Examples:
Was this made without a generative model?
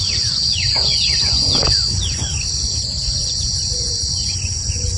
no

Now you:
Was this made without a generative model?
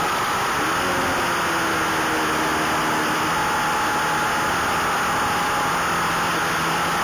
yes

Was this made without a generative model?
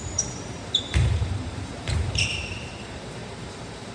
no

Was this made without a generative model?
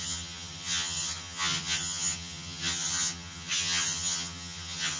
no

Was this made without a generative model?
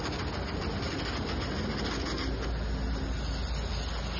yes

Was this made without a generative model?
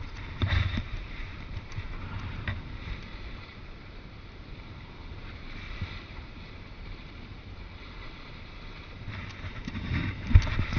no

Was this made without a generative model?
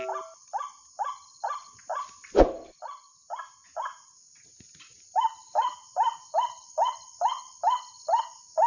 yes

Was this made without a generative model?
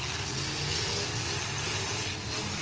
yes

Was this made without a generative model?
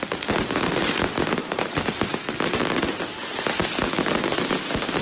yes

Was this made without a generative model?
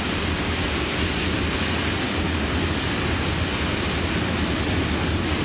yes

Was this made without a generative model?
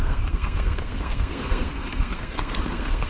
no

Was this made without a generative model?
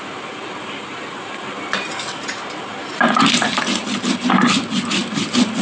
yes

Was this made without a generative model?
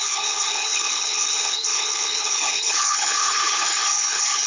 no